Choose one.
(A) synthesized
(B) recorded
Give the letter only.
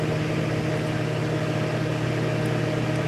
B